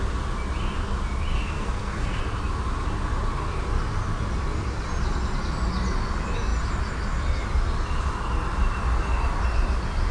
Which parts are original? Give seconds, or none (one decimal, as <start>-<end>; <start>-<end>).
0.0-1.3; 2.2-10.1